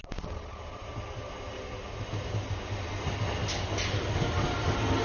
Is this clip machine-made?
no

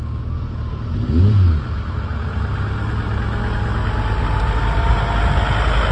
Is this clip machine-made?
no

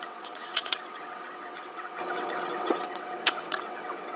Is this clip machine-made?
yes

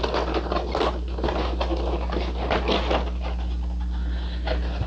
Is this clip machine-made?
no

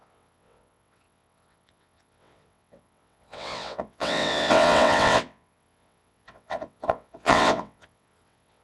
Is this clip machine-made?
yes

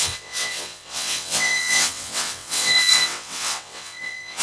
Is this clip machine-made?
yes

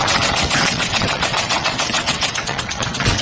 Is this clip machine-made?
yes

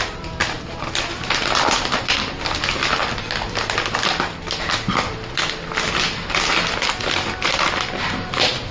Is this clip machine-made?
no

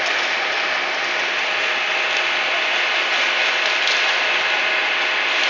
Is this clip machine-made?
no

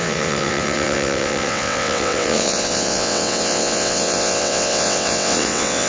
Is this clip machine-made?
yes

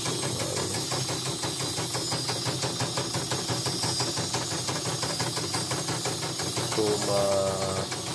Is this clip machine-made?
no